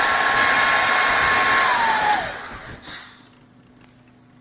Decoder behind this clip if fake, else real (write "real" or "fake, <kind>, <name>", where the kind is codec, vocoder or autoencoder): real